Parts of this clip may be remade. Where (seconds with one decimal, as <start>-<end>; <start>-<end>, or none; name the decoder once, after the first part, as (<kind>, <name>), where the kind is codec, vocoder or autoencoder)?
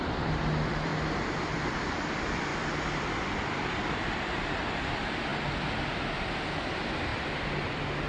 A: 0.0-0.9 (vocoder, BigVGAN v2); 1.4-5.3; 6.2-8.1